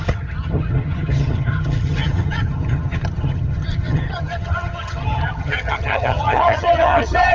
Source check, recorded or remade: remade